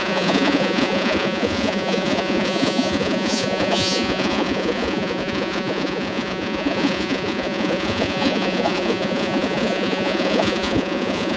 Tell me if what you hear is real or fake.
fake